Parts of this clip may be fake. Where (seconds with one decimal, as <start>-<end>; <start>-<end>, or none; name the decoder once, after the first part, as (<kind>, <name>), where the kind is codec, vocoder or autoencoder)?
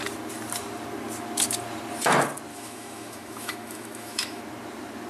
2.5-4.4 (autoencoder, DAC-VAE)